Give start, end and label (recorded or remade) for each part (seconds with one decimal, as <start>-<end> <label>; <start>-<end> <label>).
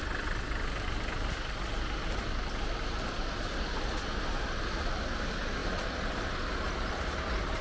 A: 0.0-7.6 recorded